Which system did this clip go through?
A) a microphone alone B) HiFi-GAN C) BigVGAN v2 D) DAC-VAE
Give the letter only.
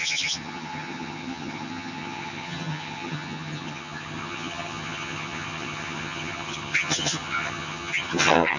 B